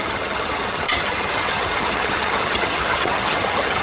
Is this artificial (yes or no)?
yes